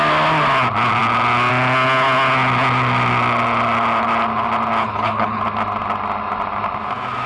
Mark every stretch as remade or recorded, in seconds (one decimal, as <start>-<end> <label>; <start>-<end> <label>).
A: 0.0-4.8 recorded; 4.8-5.4 remade; 5.4-7.3 recorded